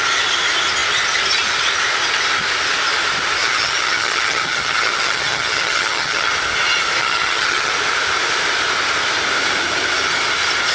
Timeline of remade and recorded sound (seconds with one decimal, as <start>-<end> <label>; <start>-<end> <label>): 0.0-3.4 recorded; 3.4-6.3 remade; 6.3-7.0 recorded; 7.0-7.7 remade; 7.7-10.7 recorded